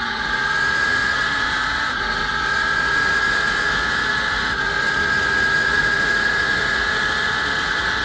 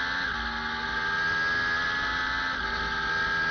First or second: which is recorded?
second